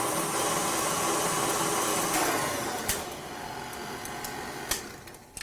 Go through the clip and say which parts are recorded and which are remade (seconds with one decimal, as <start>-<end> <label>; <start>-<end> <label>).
0.0-5.4 recorded

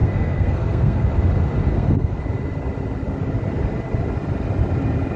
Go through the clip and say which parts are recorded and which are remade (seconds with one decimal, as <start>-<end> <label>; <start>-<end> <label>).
0.0-1.1 remade; 1.1-1.7 recorded; 1.7-2.2 remade; 2.2-5.2 recorded

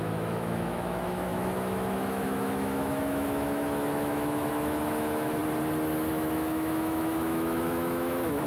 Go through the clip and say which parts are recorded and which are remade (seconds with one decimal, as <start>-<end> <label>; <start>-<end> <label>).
0.0-5.4 remade; 5.4-6.1 recorded; 6.1-8.5 remade

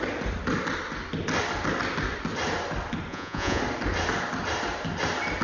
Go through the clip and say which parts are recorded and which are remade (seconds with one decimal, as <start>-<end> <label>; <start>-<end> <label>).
0.0-3.1 recorded; 3.1-3.6 remade; 3.6-5.4 recorded